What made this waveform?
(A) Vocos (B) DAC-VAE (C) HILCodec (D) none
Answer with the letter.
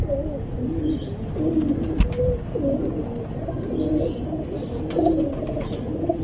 D